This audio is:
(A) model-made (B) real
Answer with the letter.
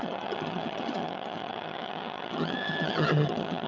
A